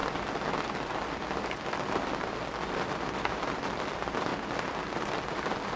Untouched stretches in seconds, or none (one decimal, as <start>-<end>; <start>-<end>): 0.0-5.8